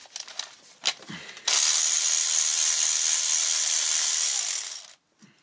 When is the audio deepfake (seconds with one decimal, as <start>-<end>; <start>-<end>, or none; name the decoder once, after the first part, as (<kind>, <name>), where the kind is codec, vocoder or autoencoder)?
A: none